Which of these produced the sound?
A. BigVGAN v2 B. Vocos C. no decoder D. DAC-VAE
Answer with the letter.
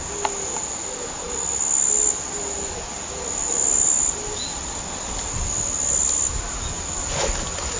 C